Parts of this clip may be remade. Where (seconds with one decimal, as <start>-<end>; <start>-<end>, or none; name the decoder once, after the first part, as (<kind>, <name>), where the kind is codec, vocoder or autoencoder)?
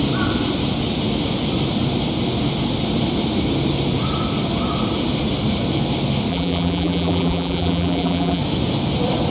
6.3-8.4 (vocoder, BigVGAN v2)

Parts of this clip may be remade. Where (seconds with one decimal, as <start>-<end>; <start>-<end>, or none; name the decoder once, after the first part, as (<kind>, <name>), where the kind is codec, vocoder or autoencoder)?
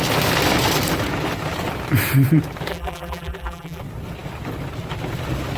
2.7-3.8 (vocoder, BigVGAN v2)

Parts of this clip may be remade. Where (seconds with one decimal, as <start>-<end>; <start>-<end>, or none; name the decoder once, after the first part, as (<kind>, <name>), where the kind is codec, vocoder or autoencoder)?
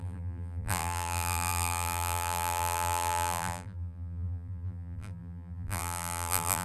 0.0-6.6 (vocoder, BigVGAN v2)